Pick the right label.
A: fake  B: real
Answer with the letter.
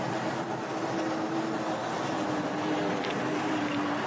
B